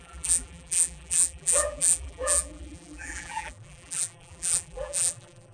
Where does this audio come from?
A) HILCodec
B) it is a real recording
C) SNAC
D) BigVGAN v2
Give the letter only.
D